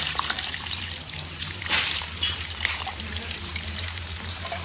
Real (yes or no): no